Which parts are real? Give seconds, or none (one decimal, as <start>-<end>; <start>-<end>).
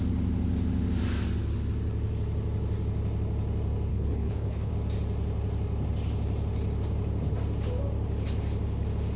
0.0-3.9; 4.7-9.2